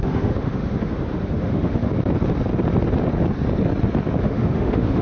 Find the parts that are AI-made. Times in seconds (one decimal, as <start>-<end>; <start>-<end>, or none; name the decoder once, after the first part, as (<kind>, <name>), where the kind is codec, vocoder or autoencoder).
0.0-1.9 (autoencoder, DAC-VAE); 4.2-5.0